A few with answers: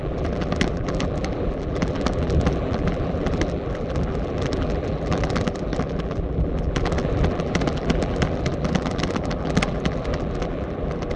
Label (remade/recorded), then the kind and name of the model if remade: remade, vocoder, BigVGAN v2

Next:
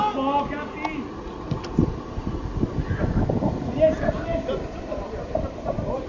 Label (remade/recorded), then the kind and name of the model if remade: recorded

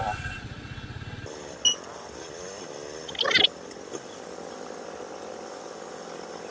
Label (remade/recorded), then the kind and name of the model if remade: recorded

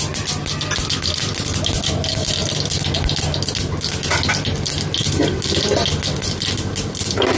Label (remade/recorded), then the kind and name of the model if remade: recorded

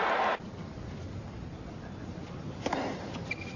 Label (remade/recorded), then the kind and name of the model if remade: recorded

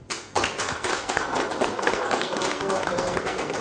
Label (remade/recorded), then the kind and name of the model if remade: remade, codec, SNAC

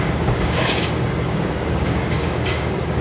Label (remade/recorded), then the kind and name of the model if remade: remade, codec, DAC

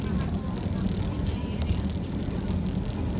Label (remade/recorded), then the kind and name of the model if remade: recorded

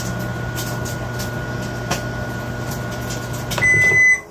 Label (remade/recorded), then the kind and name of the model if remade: recorded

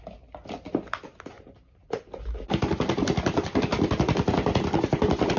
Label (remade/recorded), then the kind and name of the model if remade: recorded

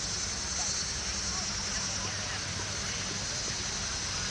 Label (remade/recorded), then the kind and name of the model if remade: recorded